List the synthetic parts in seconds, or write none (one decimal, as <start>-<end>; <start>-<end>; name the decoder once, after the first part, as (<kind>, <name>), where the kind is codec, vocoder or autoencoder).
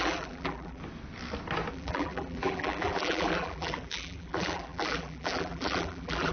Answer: 0.0-0.8 (vocoder, BigVGAN v2); 1.7-6.3